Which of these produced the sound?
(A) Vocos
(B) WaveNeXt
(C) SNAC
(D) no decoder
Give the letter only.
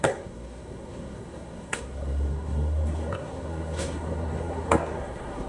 C